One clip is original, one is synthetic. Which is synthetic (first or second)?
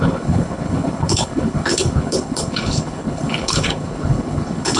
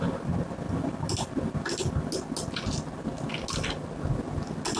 first